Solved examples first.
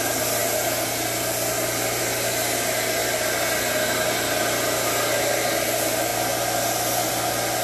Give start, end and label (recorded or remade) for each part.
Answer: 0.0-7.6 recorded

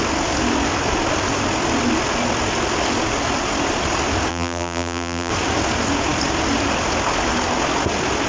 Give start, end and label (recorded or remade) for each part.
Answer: 0.0-4.3 recorded; 4.3-5.3 remade; 5.3-8.3 recorded

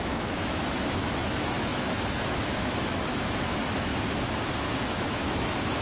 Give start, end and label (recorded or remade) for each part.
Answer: 0.0-3.9 remade; 3.9-4.8 recorded; 4.8-5.8 remade